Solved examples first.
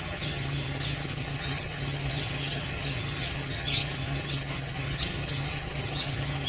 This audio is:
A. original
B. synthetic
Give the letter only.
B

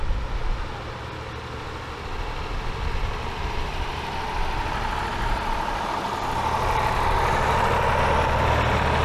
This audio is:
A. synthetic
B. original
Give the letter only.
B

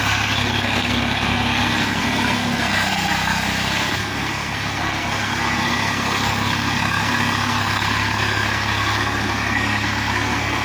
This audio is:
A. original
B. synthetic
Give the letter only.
B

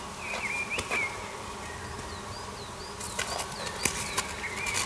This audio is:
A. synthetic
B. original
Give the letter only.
B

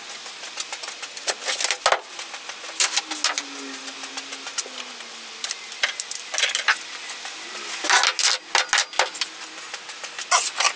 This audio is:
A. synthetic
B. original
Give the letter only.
B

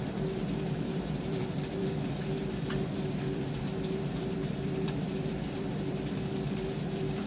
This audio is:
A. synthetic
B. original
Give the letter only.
A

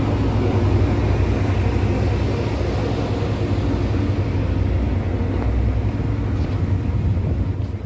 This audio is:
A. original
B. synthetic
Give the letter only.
A